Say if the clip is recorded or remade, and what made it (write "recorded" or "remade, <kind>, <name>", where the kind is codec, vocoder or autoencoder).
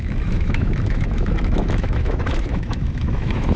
remade, autoencoder, DAC-VAE